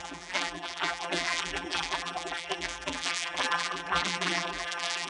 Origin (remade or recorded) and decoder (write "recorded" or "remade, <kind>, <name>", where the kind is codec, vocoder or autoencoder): remade, vocoder, BigVGAN v2